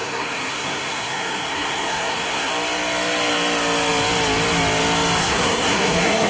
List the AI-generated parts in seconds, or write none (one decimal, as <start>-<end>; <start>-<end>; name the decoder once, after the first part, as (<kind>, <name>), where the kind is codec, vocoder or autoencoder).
0.0-2.5 (codec, SNAC); 5.2-6.3